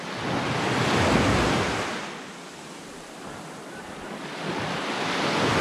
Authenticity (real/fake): real